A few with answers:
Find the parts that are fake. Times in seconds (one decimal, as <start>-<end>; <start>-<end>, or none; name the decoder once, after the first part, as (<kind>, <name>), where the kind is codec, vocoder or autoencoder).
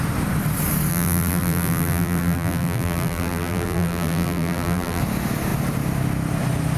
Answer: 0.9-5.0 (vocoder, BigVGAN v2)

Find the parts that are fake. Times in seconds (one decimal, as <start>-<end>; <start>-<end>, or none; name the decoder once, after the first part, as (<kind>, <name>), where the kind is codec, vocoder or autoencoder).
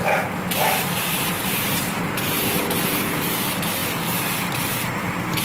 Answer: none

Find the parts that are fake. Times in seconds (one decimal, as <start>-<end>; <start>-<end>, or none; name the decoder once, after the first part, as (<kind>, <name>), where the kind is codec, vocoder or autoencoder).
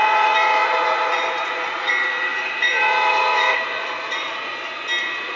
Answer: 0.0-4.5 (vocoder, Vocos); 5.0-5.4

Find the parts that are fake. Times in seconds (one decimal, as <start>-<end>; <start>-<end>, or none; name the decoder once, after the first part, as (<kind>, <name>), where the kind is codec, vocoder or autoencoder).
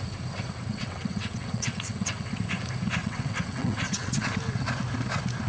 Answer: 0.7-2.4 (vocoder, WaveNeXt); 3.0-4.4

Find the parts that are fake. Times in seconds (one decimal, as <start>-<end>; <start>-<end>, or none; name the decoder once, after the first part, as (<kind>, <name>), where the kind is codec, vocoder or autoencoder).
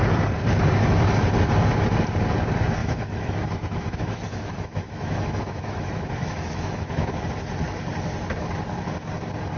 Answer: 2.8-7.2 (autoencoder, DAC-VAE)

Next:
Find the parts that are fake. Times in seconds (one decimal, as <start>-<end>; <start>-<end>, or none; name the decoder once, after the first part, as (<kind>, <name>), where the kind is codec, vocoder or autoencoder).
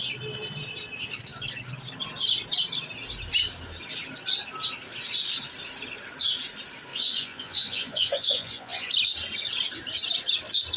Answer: 6.9-8.9 (vocoder, Vocos)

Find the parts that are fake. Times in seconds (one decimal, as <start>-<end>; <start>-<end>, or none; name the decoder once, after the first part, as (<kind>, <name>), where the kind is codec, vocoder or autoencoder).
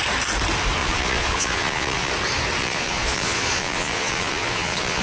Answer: 0.8-2.1 (vocoder, Vocos); 2.6-5.0